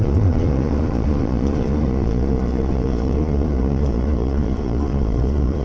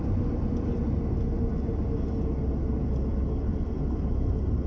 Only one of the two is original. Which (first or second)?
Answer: second